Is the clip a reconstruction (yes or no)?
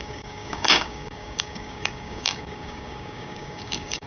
yes